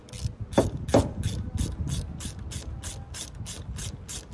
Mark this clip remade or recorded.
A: recorded